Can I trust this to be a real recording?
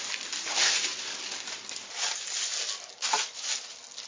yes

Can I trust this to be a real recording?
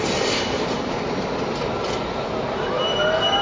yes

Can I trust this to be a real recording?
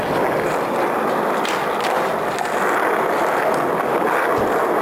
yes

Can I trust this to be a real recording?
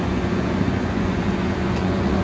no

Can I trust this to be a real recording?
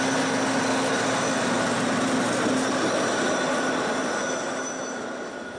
yes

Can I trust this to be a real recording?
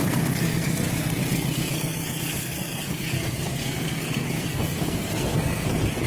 no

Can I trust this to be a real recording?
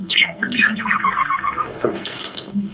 no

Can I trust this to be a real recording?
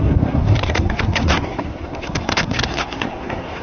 no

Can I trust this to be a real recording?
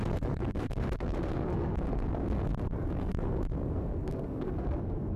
no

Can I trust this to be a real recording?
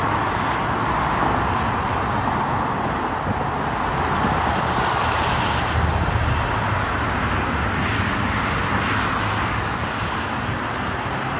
yes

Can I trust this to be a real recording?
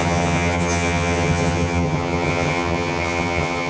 no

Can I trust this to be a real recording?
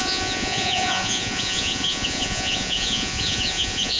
no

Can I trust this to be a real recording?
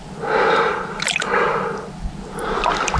yes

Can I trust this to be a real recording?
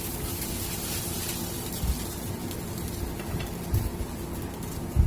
yes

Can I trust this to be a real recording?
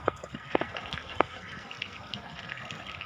no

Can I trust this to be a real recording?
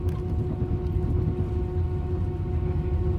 yes